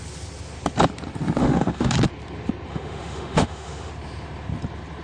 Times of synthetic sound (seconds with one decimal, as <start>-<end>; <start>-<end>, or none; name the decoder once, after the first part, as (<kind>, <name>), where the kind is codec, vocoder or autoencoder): 1.4-1.9 (autoencoder, DAC-VAE); 2.7-3.9